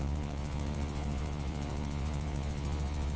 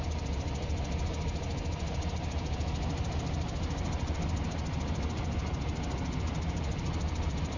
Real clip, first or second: second